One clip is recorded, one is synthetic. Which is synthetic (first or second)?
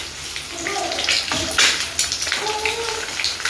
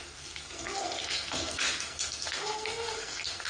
second